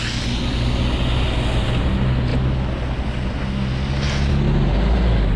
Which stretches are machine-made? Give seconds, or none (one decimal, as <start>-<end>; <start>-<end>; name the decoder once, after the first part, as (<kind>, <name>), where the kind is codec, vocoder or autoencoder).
none